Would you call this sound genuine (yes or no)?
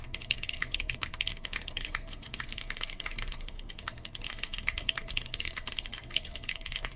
no